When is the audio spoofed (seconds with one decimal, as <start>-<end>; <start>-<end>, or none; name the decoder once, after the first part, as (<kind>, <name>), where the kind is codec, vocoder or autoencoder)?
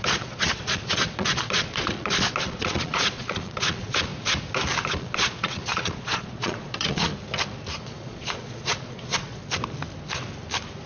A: 0.0-4.1 (vocoder, Vocos); 4.9-7.1; 7.8-9.4